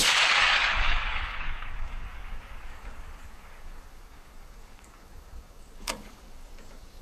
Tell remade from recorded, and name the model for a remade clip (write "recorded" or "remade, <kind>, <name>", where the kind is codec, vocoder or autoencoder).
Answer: remade, codec, DAC